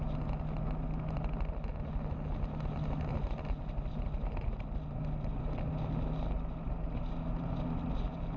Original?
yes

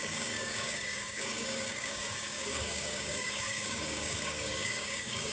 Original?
no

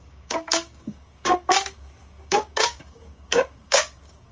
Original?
no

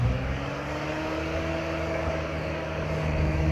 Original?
no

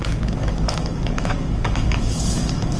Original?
no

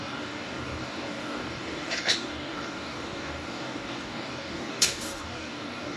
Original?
no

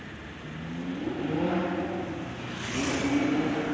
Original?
yes